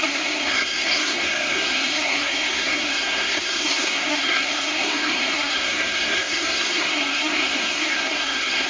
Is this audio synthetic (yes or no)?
yes